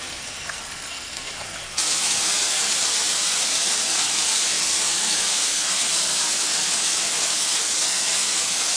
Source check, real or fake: fake